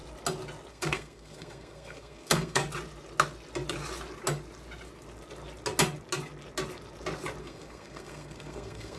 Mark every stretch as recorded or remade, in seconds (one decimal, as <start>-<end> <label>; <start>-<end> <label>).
0.0-0.7 recorded; 0.7-2.6 remade; 2.6-7.4 recorded; 7.4-9.0 remade